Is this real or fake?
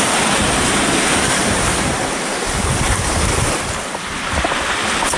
real